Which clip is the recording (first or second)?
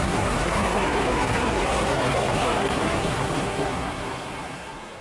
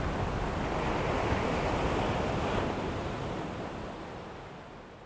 second